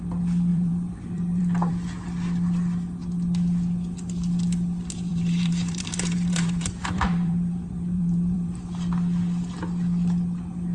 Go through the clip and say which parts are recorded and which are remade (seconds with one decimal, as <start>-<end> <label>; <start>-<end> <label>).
0.0-0.5 recorded; 0.5-1.7 remade; 1.7-5.1 recorded; 5.1-8.5 remade; 8.5-10.7 recorded